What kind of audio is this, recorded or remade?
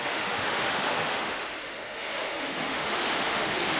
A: remade